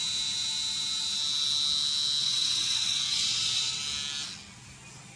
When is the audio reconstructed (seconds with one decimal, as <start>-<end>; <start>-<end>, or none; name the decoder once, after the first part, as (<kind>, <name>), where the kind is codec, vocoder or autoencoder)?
2.2-3.8 (vocoder, WaveNeXt)